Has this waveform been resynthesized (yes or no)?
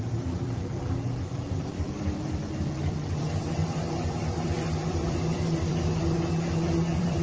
yes